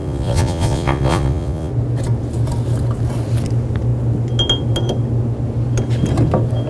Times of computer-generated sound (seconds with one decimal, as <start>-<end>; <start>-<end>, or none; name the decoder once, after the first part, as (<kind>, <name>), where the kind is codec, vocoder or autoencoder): 0.0-1.7 (vocoder, Vocos)